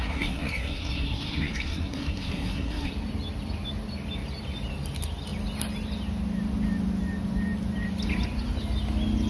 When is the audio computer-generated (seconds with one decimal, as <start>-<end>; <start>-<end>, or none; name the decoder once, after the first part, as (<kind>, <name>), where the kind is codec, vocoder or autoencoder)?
0.0-2.9 (codec, SNAC)